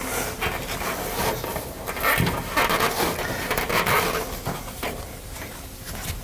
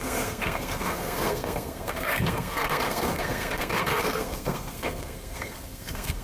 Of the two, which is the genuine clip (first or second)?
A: first